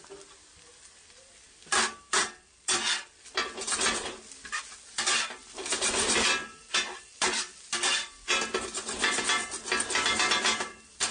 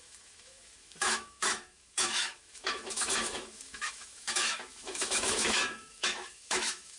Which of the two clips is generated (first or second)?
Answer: second